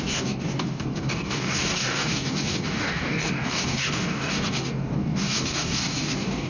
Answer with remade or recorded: remade